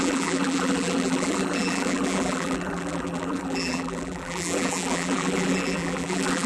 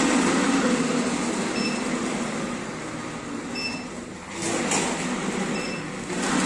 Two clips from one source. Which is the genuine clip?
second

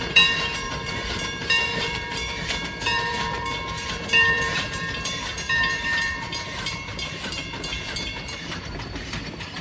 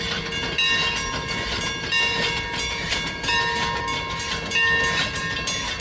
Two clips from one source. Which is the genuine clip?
second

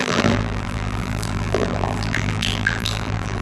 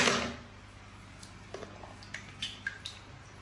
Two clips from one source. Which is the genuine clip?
second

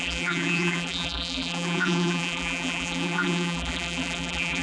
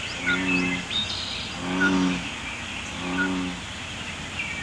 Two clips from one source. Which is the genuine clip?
second